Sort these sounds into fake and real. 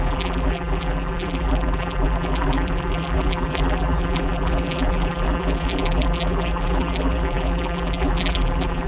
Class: fake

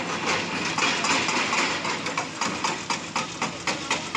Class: real